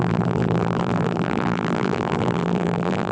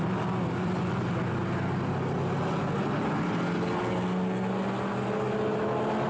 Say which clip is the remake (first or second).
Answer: first